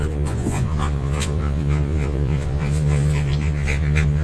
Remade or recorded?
remade